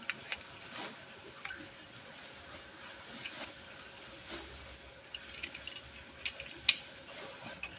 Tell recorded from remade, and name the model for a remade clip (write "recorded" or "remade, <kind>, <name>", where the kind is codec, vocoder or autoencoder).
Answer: recorded